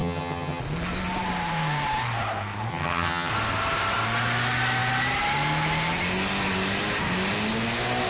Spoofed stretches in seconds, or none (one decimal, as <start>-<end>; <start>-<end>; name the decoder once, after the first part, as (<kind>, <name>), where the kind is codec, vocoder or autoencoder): 0.0-0.6 (vocoder, HiFi-GAN); 2.7-3.3

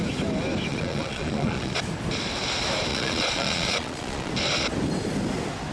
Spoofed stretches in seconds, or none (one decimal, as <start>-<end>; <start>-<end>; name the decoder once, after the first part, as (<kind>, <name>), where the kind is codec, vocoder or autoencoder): 0.7-1.8 (vocoder, Vocos); 2.9-4.3

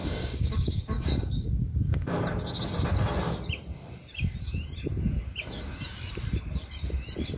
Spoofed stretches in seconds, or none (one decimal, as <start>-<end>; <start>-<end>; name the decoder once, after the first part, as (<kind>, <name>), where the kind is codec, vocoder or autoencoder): 0.0-2.2 (codec, DAC)

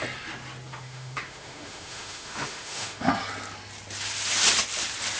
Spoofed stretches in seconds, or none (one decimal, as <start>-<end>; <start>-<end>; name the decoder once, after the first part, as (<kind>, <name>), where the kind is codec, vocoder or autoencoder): 0.7-3.1 (autoencoder, DAC-VAE)

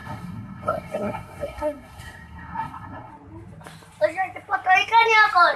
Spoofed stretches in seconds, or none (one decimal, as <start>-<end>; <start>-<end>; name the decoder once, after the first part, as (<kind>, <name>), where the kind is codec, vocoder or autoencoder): 0.0-3.1 (codec, SNAC)

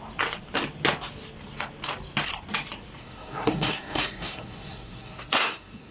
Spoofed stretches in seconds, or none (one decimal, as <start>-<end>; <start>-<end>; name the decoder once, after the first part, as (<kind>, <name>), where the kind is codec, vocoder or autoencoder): 3.0-5.9 (codec, SNAC)

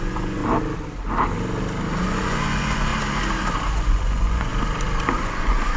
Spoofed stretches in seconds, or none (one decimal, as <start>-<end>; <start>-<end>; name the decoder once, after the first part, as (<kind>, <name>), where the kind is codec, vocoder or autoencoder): 0.0-0.4 (vocoder, Vocos); 2.0-2.9; 3.7-4.5; 5.2-5.8

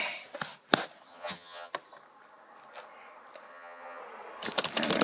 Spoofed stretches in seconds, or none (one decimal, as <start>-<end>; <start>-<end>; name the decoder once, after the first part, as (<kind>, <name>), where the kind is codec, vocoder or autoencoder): 1.1-1.7 (vocoder, HiFi-GAN); 3.5-4.0